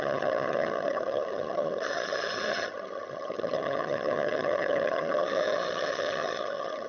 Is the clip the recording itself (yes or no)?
no